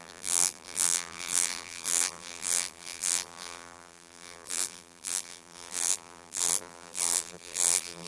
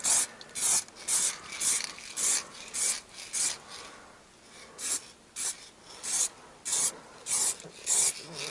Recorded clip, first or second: second